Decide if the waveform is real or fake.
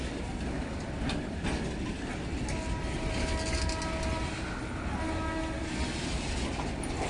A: real